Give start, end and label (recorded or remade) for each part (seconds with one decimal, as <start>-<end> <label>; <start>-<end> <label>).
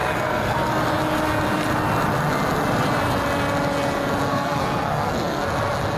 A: 0.0-0.7 remade; 0.7-4.3 recorded; 4.3-5.5 remade; 5.5-6.0 recorded